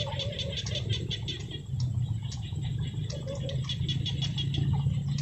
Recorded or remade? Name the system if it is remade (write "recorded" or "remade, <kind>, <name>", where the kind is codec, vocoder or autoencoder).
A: recorded